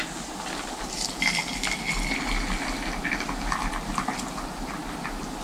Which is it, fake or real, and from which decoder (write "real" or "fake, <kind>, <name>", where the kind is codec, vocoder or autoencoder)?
real